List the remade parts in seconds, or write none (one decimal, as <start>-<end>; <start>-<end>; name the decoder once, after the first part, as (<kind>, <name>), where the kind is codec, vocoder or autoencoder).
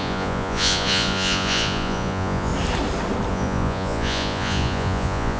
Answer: 0.0-2.5 (vocoder, Vocos); 3.3-5.4